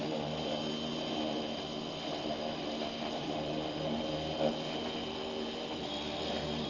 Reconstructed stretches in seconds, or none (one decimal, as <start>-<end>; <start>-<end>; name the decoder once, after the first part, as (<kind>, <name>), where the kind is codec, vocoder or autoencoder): none